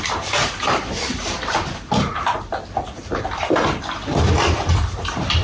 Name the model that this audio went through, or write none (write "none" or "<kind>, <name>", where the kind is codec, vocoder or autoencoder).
vocoder, BigVGAN v2